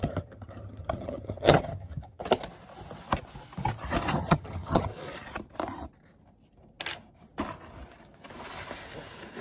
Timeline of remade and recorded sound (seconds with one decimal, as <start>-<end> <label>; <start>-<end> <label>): 0.0-2.2 remade; 2.2-4.2 recorded; 4.2-4.9 remade; 4.9-9.4 recorded